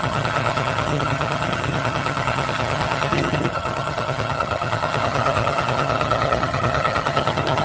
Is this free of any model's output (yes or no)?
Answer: no